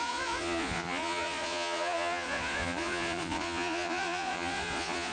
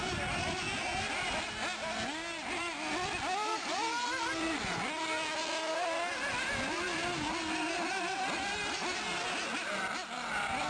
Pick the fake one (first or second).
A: first